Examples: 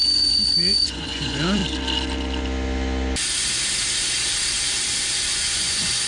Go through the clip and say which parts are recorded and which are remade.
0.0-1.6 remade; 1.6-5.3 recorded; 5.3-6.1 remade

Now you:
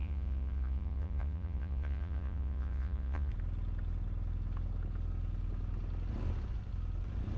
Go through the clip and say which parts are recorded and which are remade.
0.0-3.3 remade; 3.3-7.4 recorded

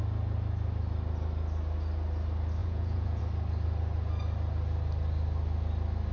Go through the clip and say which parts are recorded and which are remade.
0.0-2.6 recorded; 2.6-3.2 remade; 3.2-6.1 recorded

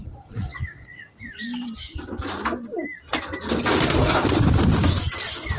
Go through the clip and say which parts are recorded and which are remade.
0.0-1.0 remade; 1.0-5.6 recorded

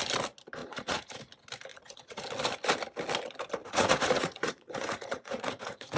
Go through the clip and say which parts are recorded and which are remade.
0.0-0.6 recorded; 0.6-1.2 remade; 1.2-1.7 recorded; 1.7-2.2 remade; 2.2-3.6 recorded; 3.6-6.0 remade

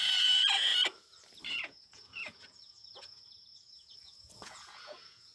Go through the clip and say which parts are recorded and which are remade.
0.0-0.7 remade; 0.7-1.5 recorded; 1.5-5.3 remade

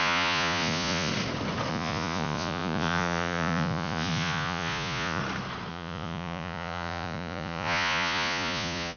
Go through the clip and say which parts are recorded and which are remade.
0.0-1.1 remade; 1.1-1.7 recorded; 1.7-5.2 remade; 5.2-5.7 recorded; 5.7-9.0 remade

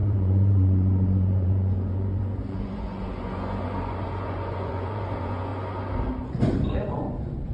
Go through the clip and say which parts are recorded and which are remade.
0.0-5.5 remade; 5.5-6.2 recorded; 6.2-7.5 remade